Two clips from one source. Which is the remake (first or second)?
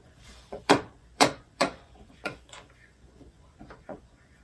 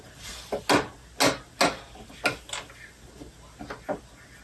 first